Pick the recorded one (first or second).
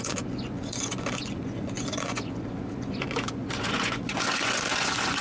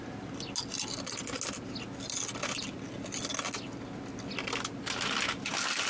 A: second